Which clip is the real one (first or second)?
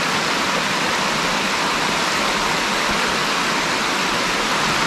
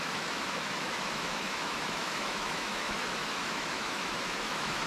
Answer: first